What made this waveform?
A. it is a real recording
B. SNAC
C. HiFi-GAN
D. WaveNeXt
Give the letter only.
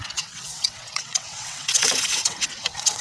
D